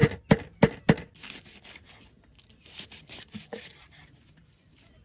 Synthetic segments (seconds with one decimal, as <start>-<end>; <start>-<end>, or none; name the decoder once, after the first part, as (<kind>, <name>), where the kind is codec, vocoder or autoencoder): 3.0-5.0 (vocoder, BigVGAN v2)